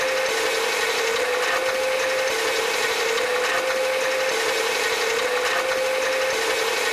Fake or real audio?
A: real